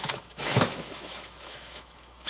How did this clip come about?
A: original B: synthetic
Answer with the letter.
B